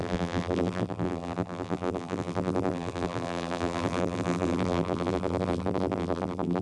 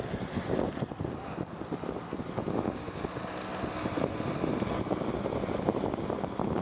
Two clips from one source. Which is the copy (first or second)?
first